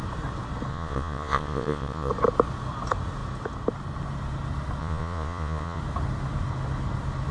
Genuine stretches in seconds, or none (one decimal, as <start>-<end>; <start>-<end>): 0.0-0.7; 2.1-4.8; 5.8-7.3